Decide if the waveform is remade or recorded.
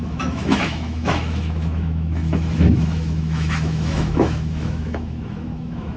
remade